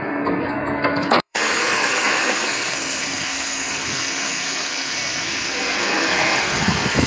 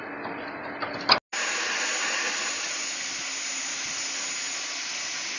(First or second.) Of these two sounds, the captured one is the second